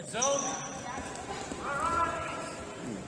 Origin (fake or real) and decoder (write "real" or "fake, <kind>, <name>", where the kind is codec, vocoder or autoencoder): real